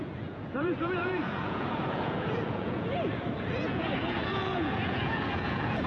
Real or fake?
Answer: fake